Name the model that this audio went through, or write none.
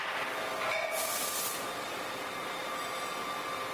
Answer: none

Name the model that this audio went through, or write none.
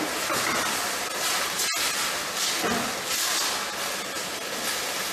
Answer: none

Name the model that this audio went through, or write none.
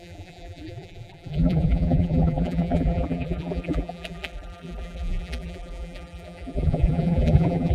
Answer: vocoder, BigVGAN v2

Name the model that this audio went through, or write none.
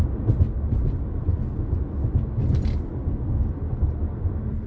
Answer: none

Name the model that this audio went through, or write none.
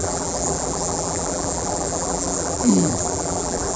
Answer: vocoder, BigVGAN v2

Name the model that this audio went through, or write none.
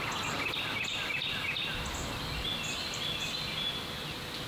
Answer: none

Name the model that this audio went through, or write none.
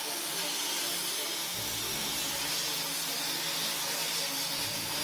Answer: none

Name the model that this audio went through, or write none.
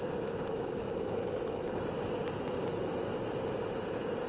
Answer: none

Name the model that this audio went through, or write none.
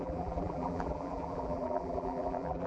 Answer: vocoder, BigVGAN v2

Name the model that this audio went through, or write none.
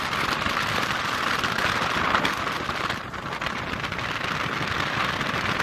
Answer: none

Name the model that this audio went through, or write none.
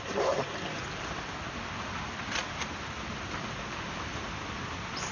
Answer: none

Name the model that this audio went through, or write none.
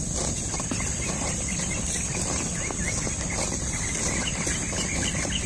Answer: none